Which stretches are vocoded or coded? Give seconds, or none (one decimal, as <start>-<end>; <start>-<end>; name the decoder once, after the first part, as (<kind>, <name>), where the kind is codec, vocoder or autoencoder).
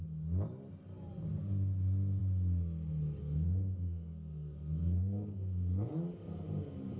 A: 3.2-5.9 (codec, SNAC)